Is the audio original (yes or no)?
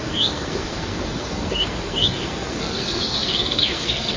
no